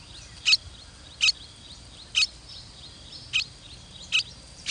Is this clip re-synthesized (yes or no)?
no